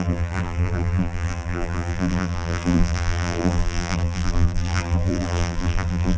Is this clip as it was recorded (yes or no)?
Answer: no